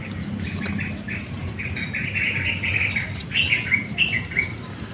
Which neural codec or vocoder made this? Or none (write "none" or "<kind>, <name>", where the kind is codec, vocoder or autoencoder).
none